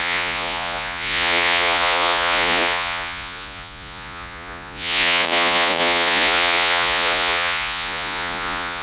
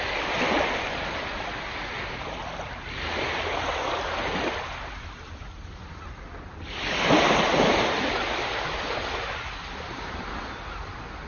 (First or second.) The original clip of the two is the second